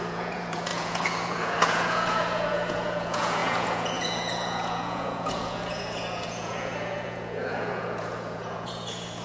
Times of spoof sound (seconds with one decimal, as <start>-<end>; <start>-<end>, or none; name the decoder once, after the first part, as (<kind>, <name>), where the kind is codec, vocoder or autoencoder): 0.0-9.2 (vocoder, Vocos)